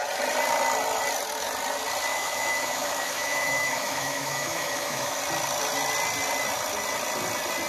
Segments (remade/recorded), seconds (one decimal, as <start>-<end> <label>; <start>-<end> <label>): 0.0-2.1 recorded; 2.1-5.2 remade; 5.2-7.7 recorded